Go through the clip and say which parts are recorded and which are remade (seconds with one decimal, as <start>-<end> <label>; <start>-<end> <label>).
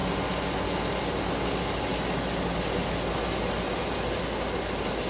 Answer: 0.0-5.1 recorded